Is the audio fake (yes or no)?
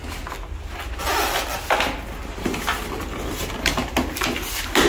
no